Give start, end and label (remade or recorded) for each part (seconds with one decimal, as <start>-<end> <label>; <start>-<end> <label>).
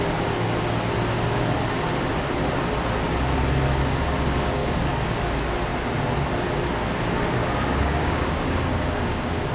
0.0-4.6 recorded; 4.6-5.2 remade; 5.2-7.4 recorded; 7.4-9.5 remade